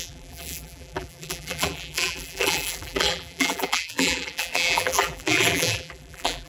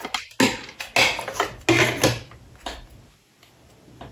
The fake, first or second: first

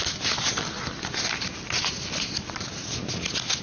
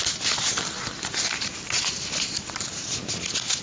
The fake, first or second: second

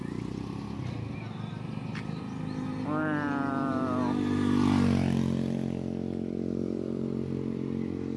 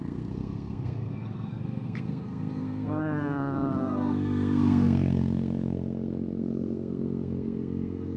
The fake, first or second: second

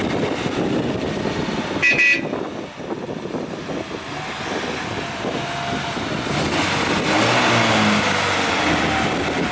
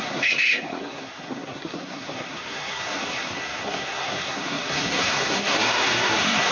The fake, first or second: second